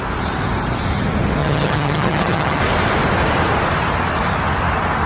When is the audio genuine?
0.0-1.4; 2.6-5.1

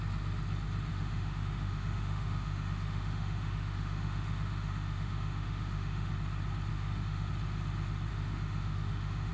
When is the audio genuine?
0.0-0.9; 6.1-6.7; 7.3-8.1

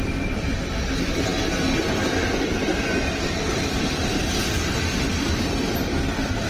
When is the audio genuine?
2.7-3.5

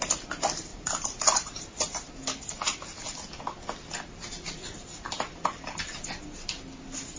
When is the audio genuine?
0.0-0.7; 1.8-4.9; 6.0-7.2

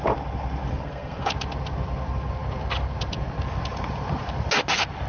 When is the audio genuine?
0.0-0.7; 1.3-5.1

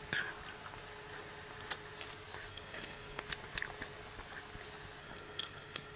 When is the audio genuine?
0.0-2.5; 3.2-5.0

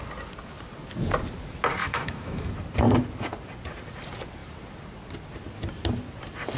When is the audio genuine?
0.0-1.8; 2.5-6.6